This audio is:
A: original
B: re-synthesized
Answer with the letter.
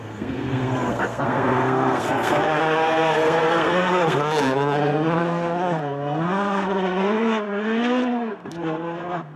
B